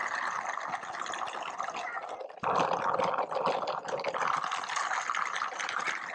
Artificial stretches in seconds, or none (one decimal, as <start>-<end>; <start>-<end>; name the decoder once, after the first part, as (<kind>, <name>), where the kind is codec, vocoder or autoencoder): none